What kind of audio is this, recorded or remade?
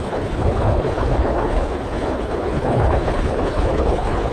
remade